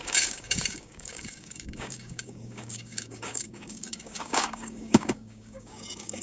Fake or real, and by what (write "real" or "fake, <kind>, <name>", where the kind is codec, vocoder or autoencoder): fake, codec, DAC